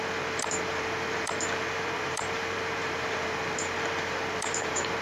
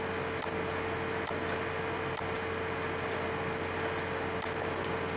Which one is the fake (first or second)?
first